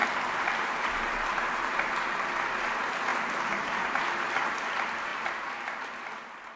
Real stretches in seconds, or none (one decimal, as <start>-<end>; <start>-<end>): 1.9-3.1; 4.0-5.1; 5.9-6.6